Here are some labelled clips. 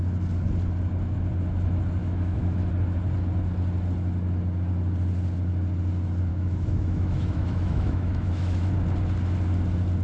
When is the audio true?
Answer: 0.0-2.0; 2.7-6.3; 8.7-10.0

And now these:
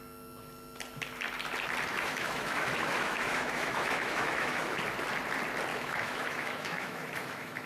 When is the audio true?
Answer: 0.0-1.9; 4.8-5.7